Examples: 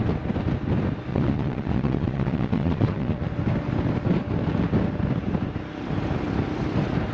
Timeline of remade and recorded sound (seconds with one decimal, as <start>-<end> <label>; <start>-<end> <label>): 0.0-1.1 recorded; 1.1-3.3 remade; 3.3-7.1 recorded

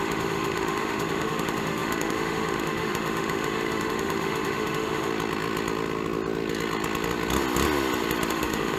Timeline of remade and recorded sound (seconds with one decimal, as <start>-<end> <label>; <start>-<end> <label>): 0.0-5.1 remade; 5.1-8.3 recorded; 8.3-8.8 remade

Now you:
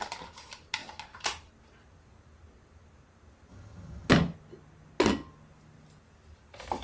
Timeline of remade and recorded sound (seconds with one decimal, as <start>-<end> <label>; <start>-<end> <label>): 0.0-3.5 recorded; 3.5-4.1 remade; 4.1-6.8 recorded

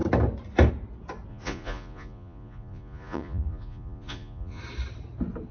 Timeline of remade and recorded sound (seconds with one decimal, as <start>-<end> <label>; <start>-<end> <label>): 0.0-1.3 recorded; 1.3-4.6 remade; 4.6-5.5 recorded

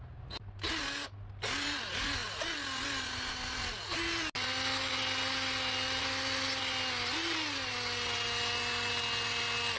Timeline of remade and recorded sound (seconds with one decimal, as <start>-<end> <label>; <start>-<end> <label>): 0.0-9.8 recorded